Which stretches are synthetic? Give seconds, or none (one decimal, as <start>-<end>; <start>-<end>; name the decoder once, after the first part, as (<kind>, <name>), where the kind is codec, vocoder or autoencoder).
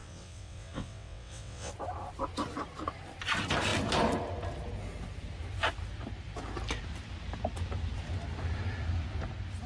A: 0.0-1.7 (vocoder, WaveNeXt)